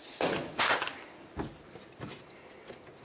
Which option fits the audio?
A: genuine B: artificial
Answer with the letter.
A